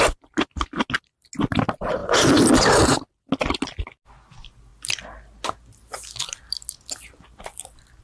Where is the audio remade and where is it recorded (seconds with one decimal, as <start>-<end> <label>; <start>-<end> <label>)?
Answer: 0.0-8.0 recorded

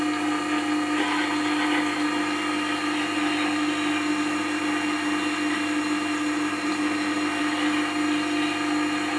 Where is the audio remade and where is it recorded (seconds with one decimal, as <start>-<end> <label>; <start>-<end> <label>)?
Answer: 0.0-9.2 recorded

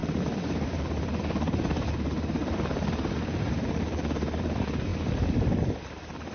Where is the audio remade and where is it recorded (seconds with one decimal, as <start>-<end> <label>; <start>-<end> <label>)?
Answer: 0.0-6.3 remade